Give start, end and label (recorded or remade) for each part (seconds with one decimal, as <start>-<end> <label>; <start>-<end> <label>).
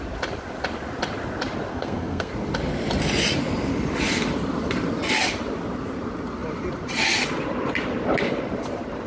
0.0-1.7 recorded; 1.7-2.3 remade; 2.3-9.1 recorded